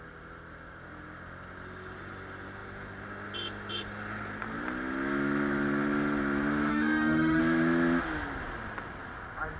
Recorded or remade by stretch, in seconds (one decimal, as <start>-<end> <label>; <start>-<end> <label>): 0.0-6.7 recorded; 6.7-7.4 remade; 7.4-9.6 recorded